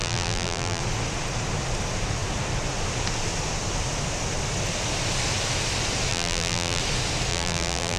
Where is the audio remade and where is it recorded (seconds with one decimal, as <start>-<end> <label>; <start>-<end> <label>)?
0.0-0.8 remade; 0.8-6.1 recorded; 6.1-6.8 remade; 6.8-7.3 recorded; 7.3-8.0 remade